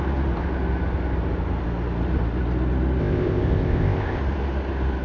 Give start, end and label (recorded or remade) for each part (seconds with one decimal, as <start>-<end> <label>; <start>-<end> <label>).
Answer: 0.0-3.0 recorded; 3.0-4.2 remade; 4.2-5.0 recorded